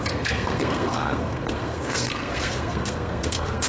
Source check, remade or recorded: remade